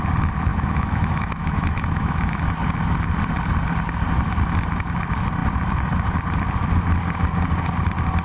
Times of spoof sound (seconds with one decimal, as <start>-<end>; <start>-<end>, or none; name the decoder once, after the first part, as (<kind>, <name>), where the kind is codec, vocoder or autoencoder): 0.5-2.5 (autoencoder, DAC-VAE)